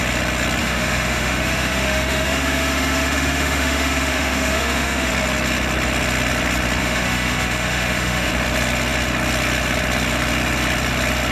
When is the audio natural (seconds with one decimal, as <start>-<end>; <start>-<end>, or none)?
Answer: 0.0-0.6; 5.1-6.8; 8.3-11.3